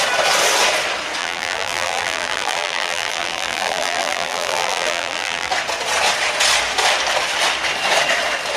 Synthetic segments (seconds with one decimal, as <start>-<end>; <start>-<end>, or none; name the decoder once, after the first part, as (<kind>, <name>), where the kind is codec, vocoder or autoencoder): 1.2-5.5 (vocoder, BigVGAN v2)